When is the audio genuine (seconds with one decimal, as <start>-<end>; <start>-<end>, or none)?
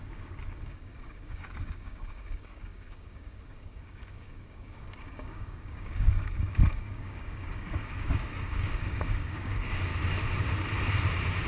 9.9-11.5